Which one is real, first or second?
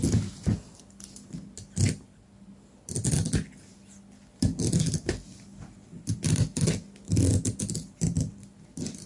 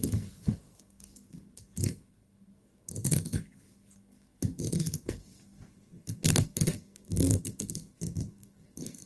first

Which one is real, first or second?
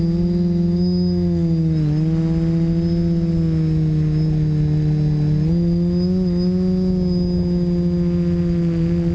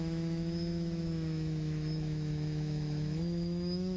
first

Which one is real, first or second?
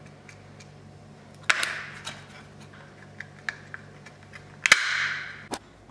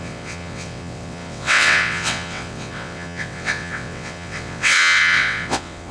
first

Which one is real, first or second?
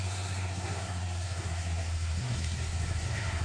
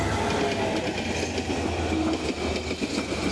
second